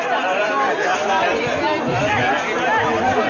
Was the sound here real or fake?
real